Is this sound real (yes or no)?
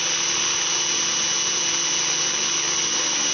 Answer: yes